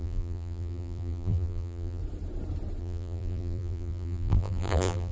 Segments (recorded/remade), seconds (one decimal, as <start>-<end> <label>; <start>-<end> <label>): 0.0-2.0 remade; 2.0-2.8 recorded; 2.8-5.1 remade